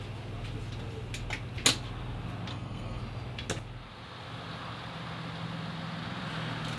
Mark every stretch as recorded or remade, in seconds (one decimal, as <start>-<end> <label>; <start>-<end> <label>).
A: 0.0-2.5 recorded; 2.5-3.0 remade; 3.0-6.8 recorded